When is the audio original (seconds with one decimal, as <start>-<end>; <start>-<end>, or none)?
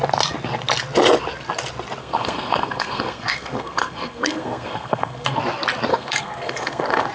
0.0-2.0; 5.4-5.9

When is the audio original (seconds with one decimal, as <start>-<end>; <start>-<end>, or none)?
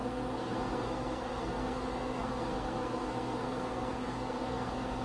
none